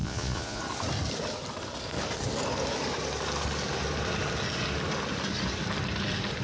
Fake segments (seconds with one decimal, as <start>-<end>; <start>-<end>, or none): 0.0-0.6